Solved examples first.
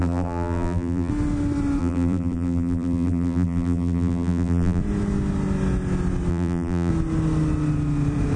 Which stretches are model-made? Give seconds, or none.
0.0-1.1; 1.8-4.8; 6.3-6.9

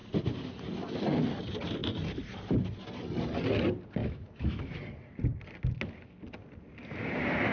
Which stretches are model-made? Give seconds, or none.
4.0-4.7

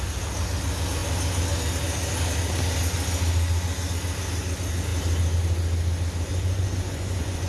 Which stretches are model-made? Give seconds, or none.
6.3-7.5